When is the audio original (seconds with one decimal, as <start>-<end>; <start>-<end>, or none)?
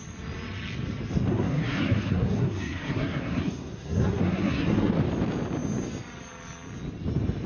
0.0-1.3; 4.9-7.5